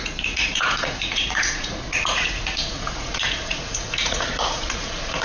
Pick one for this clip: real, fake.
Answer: fake